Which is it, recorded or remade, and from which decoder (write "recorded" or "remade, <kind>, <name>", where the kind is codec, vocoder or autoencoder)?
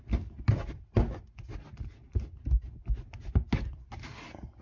recorded